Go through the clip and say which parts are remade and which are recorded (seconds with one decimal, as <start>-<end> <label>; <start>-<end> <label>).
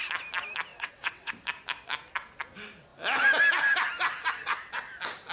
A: 0.0-0.7 recorded; 0.7-1.3 remade; 1.3-5.3 recorded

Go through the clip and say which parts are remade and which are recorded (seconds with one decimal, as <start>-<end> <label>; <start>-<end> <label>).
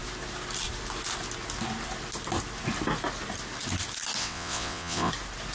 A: 0.0-4.2 recorded; 4.2-5.1 remade; 5.1-5.5 recorded